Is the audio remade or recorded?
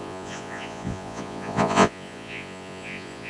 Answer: remade